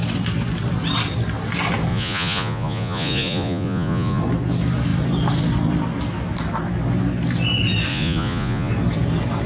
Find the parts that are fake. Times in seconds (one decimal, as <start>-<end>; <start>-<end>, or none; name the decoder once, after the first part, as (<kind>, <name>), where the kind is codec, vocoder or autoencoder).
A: 1.9-4.2 (vocoder, Vocos); 7.9-8.7